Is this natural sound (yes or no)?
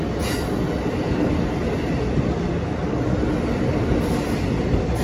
yes